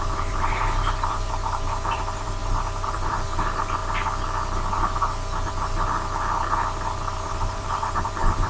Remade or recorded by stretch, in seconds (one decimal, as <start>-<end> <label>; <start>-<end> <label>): 0.0-3.8 remade; 3.8-7.0 recorded; 7.0-8.5 remade